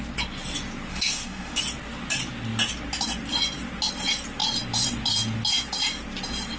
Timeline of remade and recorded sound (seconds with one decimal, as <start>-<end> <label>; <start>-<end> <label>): 0.0-0.9 recorded; 0.9-1.6 remade; 1.6-6.6 recorded